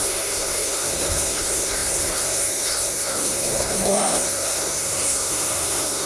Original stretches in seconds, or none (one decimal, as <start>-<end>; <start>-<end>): none